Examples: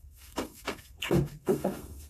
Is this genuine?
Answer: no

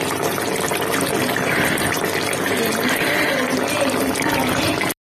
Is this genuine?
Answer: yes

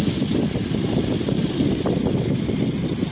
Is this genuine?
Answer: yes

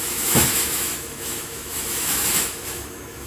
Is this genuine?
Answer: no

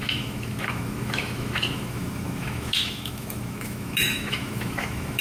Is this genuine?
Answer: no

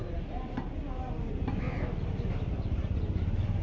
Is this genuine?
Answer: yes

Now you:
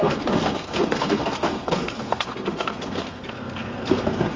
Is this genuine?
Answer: no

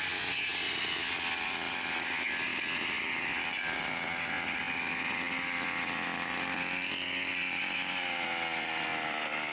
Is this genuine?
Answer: yes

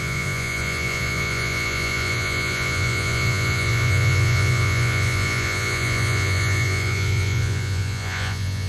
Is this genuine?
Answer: no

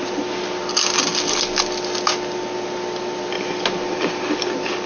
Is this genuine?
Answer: yes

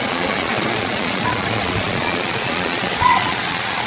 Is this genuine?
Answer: no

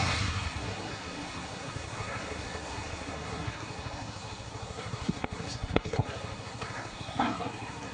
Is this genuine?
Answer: no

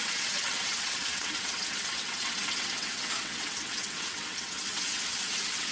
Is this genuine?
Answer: no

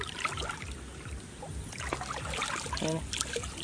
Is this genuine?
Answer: yes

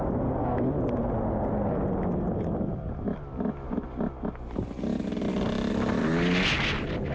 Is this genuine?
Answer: yes